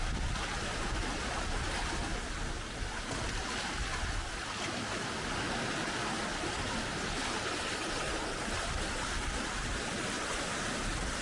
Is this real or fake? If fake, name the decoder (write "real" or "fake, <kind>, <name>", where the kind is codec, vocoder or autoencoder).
real